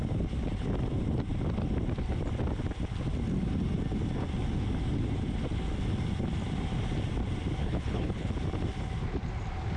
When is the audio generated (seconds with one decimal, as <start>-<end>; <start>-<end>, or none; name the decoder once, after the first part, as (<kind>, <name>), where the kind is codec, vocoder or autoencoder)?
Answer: 7.6-8.3 (codec, HILCodec)